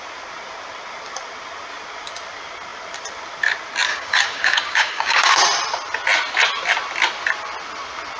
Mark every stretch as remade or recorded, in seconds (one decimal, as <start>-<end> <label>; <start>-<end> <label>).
0.0-3.9 recorded; 3.9-5.3 remade; 5.3-8.2 recorded